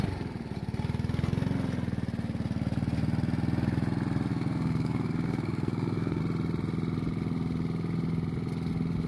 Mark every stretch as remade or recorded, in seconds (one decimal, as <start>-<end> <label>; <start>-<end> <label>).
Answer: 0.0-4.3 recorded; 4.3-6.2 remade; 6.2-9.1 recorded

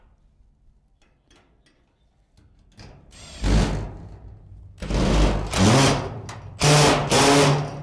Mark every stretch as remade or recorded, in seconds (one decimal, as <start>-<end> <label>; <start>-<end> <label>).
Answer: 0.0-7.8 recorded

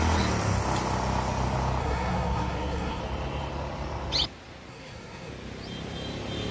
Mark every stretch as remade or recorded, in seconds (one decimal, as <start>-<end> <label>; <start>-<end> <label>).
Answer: 0.0-1.8 recorded; 1.8-3.0 remade; 3.0-4.7 recorded; 4.7-5.3 remade; 5.3-6.5 recorded

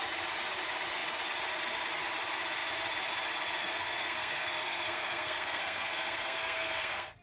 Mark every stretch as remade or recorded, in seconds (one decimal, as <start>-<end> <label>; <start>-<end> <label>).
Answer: 0.0-3.6 recorded; 3.6-7.2 remade

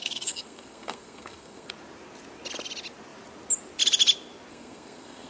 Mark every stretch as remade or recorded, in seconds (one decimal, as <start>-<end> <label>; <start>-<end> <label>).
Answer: 0.0-1.7 remade; 1.7-4.5 recorded; 4.5-5.3 remade